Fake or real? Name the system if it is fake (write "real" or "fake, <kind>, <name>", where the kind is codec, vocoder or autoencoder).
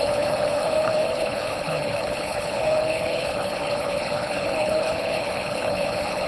fake, codec, HILCodec